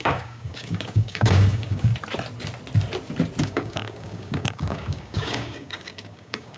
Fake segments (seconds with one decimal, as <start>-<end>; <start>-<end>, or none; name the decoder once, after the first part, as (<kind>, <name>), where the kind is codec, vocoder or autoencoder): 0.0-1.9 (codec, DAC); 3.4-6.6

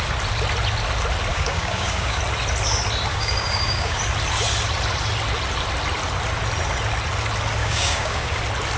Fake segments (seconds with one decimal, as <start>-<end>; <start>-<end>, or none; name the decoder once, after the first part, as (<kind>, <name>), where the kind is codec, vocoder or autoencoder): 1.3-2.2 (codec, DAC); 3.1-4.0; 7.6-8.4

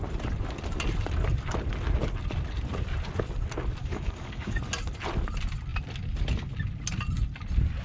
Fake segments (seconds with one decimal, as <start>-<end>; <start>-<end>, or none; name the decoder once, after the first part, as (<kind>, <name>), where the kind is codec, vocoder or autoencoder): 3.8-4.6 (codec, DAC)

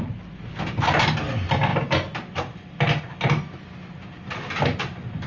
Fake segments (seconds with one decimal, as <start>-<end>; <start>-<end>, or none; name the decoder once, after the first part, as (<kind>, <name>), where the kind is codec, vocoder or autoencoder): none

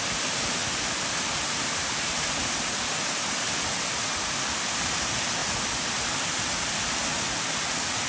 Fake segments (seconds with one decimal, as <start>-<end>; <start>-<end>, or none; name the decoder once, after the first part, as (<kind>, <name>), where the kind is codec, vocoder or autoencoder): none